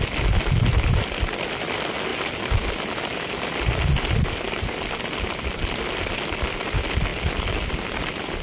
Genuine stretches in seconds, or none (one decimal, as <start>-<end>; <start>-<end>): 0.0-8.4

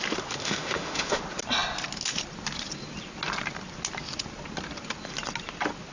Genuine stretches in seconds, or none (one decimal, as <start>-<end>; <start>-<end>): 0.0-0.4; 1.2-5.9

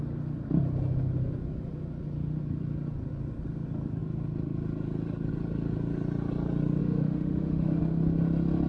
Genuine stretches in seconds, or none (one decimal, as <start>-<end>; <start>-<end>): 0.0-6.8; 7.8-8.7

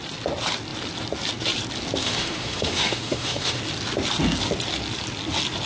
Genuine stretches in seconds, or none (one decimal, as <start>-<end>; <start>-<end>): 0.0-2.0; 3.6-5.7

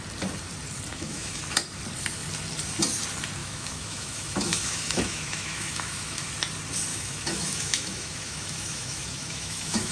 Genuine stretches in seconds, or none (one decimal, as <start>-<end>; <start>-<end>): 0.0-0.9; 1.4-3.4; 6.3-6.9

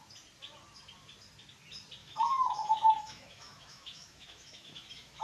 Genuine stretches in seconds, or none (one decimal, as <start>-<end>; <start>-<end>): 0.0-2.0

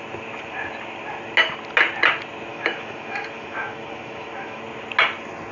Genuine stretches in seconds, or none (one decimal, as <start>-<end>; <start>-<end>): 0.0-2.5; 4.6-5.5